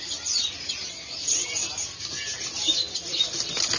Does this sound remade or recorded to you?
recorded